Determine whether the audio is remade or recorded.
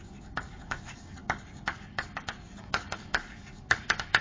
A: remade